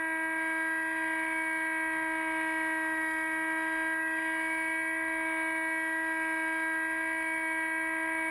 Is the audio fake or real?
real